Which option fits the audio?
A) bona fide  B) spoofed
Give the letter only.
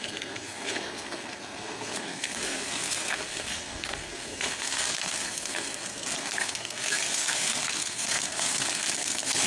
B